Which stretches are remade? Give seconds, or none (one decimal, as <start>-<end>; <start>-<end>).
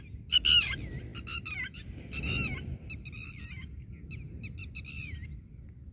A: none